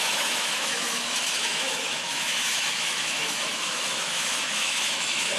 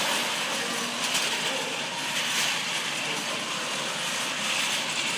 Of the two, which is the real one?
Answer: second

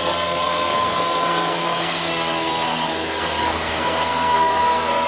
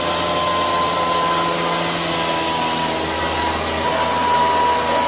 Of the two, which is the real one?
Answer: second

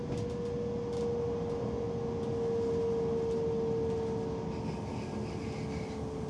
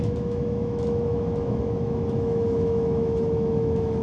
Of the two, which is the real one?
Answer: first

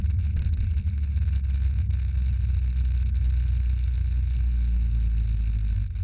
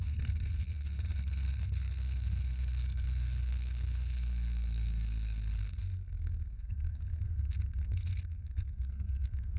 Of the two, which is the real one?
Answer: first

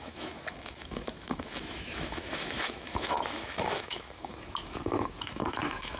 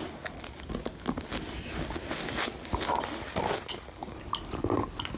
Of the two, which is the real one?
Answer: second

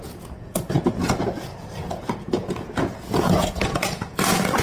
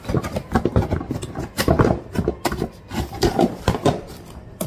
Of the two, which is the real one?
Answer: second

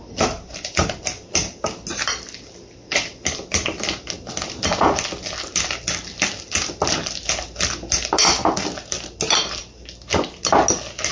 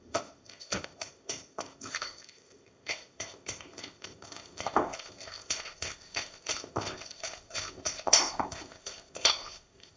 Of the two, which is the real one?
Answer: first